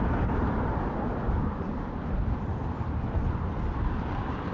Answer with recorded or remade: remade